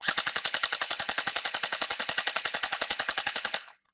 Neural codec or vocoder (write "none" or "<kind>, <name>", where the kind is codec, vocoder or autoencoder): codec, HILCodec